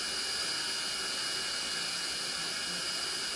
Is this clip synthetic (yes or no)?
no